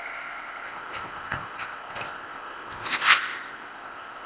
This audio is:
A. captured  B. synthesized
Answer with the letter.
B